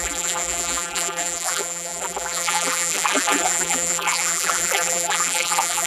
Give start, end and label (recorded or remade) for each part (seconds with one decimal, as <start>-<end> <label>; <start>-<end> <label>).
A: 0.0-5.9 remade